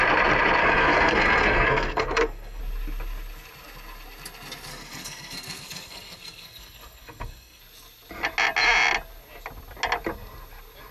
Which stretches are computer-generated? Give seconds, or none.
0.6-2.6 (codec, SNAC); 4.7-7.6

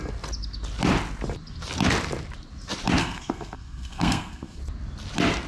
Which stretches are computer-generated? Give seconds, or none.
3.0-4.6 (codec, SNAC)

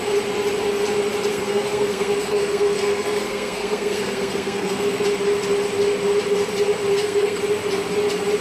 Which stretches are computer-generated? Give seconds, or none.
1.3-5.0 (codec, SNAC); 6.9-7.4